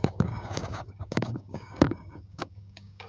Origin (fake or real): fake